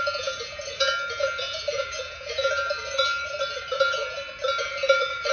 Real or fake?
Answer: fake